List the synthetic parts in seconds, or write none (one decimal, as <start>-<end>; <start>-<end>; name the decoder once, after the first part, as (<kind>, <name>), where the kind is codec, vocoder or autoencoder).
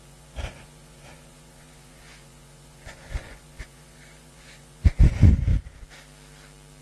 0.0-5.5 (vocoder, Vocos)